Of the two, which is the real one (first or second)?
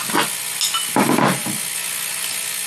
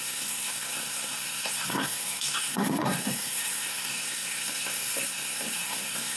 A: first